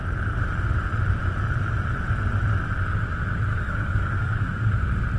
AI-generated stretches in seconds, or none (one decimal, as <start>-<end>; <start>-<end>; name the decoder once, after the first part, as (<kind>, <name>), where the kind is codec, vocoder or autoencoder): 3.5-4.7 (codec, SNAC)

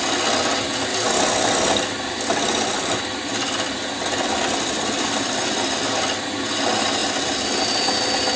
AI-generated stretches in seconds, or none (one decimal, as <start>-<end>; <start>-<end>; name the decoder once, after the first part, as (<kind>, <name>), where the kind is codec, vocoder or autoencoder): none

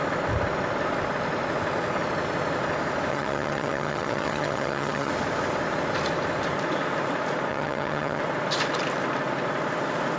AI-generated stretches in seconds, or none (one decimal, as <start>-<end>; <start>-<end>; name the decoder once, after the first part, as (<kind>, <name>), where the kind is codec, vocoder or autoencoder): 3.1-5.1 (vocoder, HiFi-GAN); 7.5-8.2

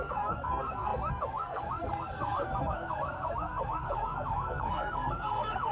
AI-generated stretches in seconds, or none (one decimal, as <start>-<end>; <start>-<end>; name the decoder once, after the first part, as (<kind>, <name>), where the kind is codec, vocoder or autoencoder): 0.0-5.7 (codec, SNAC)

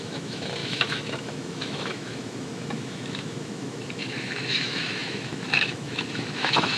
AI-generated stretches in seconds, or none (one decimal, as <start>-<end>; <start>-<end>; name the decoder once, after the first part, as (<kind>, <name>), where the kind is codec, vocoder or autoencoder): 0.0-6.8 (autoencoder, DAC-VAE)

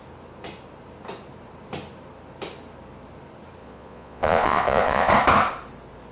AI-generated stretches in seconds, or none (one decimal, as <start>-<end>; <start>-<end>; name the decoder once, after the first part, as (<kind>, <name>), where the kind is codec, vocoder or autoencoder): 3.6-5.1 (vocoder, Vocos)

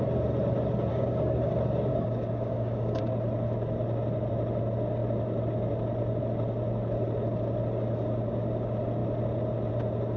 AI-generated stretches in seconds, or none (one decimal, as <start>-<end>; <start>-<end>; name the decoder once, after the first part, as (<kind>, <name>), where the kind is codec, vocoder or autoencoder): 0.9-1.5 (codec, DAC); 1.9-3.0